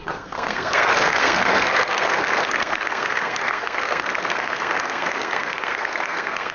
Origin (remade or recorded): remade